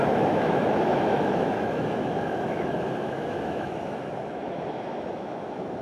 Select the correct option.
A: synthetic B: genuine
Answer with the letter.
A